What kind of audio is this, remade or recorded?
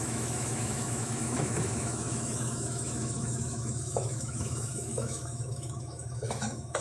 remade